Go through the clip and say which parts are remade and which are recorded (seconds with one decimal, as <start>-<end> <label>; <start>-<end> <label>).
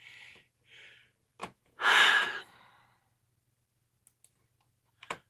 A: 0.0-1.4 recorded; 1.4-2.3 remade; 2.3-5.3 recorded